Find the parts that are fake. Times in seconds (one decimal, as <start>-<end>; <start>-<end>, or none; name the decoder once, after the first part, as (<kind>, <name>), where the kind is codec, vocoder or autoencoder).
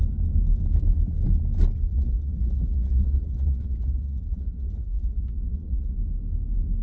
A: 1.9-6.0 (vocoder, Vocos)